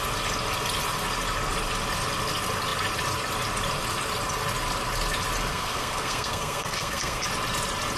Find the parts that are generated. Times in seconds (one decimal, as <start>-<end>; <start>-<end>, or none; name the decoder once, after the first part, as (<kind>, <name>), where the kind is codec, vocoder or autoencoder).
5.5-7.2 (codec, SNAC)